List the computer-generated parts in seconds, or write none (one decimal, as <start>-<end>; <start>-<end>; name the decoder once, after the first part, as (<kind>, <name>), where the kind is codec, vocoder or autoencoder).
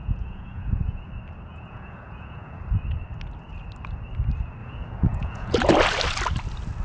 0.0-1.1 (vocoder, Vocos); 1.5-2.6; 4.6-5.7